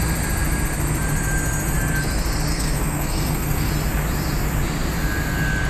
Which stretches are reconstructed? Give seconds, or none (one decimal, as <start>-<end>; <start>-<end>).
2.5-3.7